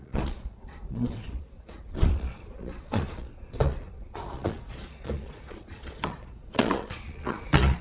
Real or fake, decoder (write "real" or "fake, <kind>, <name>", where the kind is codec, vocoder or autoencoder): fake, vocoder, Vocos